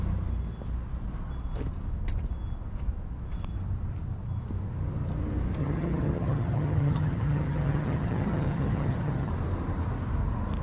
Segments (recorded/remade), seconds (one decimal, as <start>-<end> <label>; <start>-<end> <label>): 0.0-5.6 recorded; 5.6-9.3 remade; 9.3-10.6 recorded